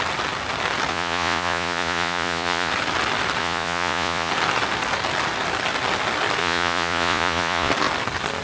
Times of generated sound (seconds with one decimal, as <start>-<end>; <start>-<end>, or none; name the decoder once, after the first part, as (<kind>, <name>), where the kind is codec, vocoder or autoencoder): 0.9-2.7 (vocoder, Vocos); 3.4-4.3; 6.4-7.7